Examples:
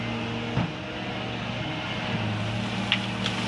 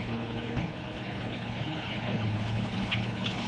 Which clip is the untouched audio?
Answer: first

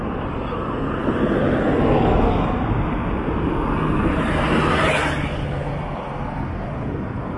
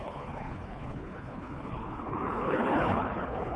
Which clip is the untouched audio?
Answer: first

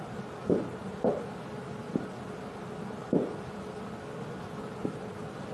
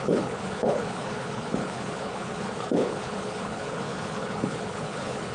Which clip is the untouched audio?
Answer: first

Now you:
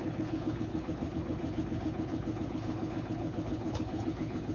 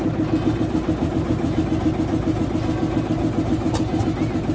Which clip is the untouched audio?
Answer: second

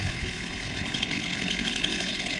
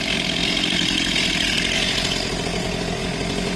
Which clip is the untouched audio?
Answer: second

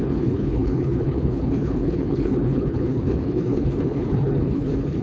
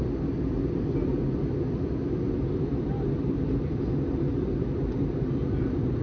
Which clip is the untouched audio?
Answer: second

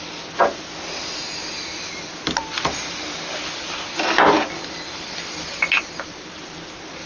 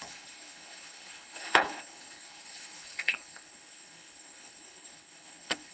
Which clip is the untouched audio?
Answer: first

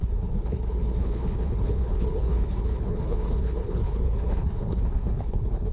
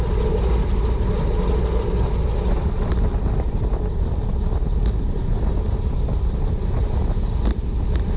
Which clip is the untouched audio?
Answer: second